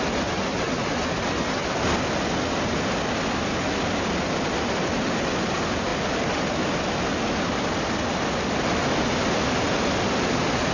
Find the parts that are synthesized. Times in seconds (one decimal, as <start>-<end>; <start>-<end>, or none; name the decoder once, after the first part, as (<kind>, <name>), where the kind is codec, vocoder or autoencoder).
none